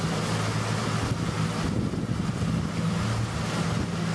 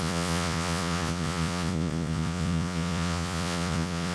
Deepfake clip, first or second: second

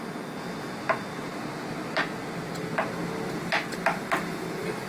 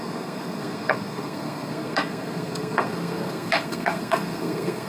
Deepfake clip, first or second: second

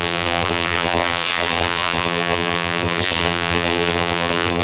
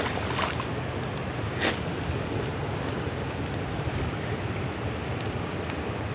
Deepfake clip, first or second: first